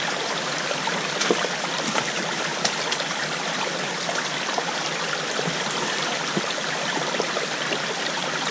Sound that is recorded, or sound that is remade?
remade